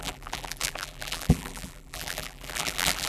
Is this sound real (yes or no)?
no